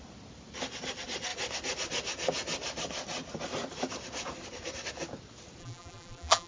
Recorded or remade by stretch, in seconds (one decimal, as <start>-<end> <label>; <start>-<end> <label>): 0.0-5.6 recorded; 5.6-6.5 remade